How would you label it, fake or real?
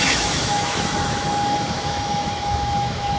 fake